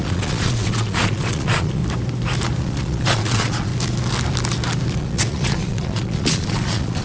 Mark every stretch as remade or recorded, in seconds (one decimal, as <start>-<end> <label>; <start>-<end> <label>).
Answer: 0.0-1.8 remade; 1.8-2.6 recorded; 2.6-3.7 remade; 3.7-5.0 recorded; 5.0-7.0 remade